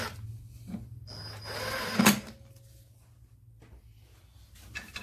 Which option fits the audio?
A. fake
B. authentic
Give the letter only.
B